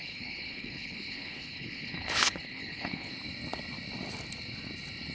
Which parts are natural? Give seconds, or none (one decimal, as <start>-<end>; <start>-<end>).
3.1-5.1